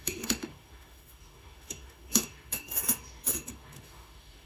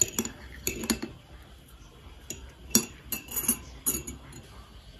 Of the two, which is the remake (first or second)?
first